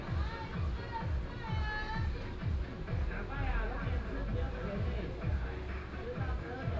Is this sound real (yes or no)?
yes